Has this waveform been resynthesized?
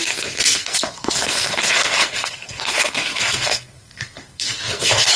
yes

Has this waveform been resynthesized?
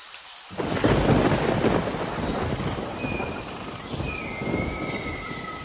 no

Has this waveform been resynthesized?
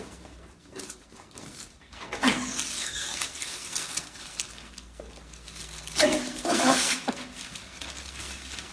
yes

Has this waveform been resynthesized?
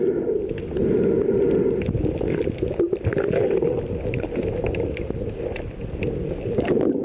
no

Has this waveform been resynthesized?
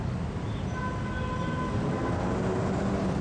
no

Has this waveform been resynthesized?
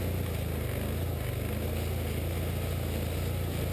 no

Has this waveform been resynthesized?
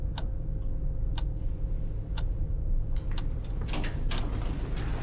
no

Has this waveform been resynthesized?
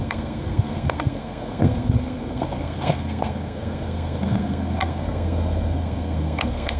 yes